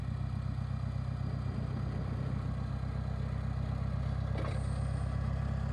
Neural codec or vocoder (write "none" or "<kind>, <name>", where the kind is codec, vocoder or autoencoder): none